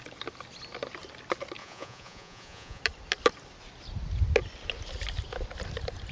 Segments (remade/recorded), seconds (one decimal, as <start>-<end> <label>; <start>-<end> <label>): 0.0-1.6 recorded; 1.6-2.8 remade; 2.8-6.1 recorded